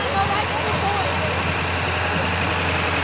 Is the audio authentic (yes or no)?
yes